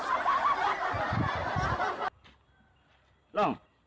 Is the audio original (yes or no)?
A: yes